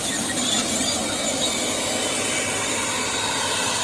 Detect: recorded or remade recorded